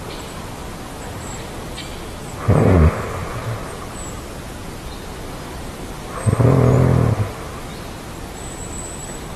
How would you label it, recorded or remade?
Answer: recorded